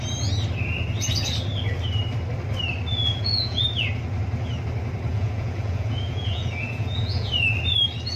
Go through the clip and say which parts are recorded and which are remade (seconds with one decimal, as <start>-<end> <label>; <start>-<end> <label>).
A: 0.0-2.9 recorded; 2.9-3.9 remade; 3.9-5.1 recorded; 5.1-7.3 remade; 7.3-8.2 recorded